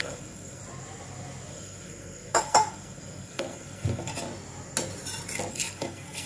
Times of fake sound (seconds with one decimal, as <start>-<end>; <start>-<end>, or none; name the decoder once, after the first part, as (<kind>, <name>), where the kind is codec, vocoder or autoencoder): 0.0-0.6 (codec, SNAC); 1.5-4.1; 5.5-6.3